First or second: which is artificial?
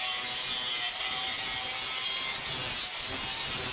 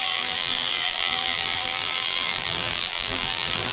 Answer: second